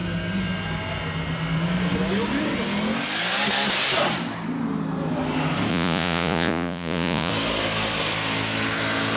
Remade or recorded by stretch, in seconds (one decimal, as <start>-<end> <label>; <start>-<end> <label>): 0.0-5.7 recorded; 5.7-7.3 remade; 7.3-9.2 recorded